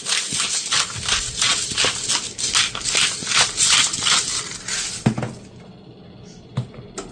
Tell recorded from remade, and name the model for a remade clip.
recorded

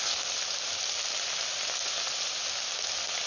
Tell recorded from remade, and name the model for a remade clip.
recorded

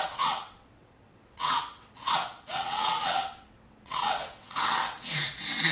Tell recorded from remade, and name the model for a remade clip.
remade, vocoder, WaveNeXt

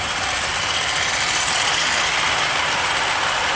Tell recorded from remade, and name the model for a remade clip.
recorded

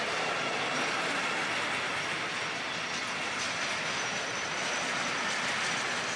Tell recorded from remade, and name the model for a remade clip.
recorded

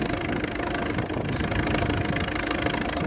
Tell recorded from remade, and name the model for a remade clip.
recorded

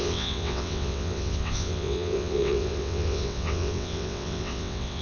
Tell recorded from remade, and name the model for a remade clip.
remade, vocoder, WaveNeXt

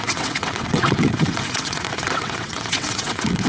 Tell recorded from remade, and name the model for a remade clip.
remade, vocoder, WaveNeXt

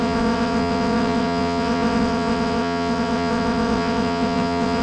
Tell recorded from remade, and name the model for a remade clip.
remade, vocoder, WaveNeXt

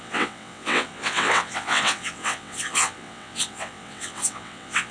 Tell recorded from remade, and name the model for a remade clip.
remade, vocoder, WaveNeXt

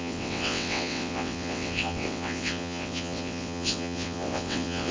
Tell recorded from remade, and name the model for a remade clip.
remade, vocoder, WaveNeXt